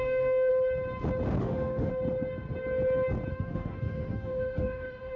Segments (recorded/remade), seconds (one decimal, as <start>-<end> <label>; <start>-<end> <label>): 0.0-0.5 remade; 0.5-1.4 recorded; 1.4-1.9 remade; 1.9-3.3 recorded; 3.3-5.2 remade